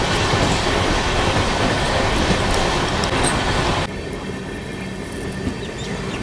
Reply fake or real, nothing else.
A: real